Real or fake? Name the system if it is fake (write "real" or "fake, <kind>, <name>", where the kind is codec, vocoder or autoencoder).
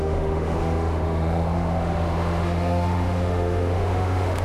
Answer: fake, autoencoder, DAC-VAE